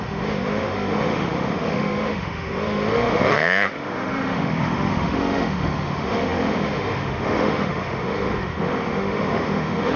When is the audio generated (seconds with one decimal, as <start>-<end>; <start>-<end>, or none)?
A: 0.0-10.0